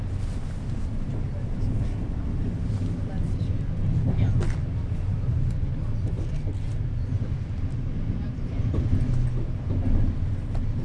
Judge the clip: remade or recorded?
recorded